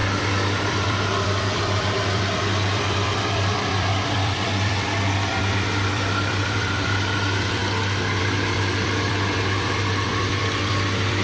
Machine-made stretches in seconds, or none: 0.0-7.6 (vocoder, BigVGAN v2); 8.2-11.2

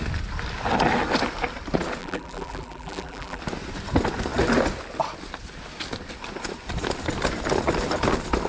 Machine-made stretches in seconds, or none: 2.0-3.4 (vocoder, BigVGAN v2)

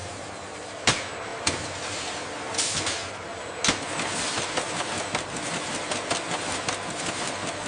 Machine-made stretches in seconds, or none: none

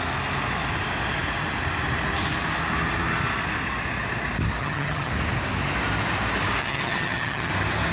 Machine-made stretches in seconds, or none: 4.6-5.1 (vocoder, HiFi-GAN); 6.6-7.5

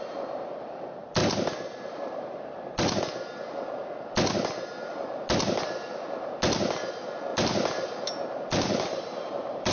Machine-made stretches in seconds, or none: 1.2-3.0 (vocoder, BigVGAN v2); 7.3-9.7

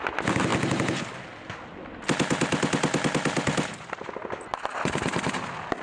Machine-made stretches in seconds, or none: none

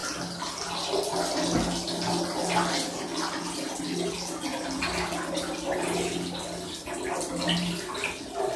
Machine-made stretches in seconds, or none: none

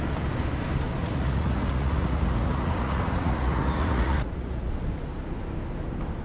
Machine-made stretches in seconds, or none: 1.0-4.7 (vocoder, Vocos)